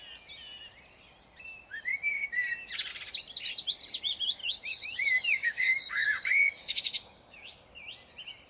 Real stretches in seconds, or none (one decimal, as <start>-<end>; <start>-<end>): 0.0-4.4; 7.7-8.5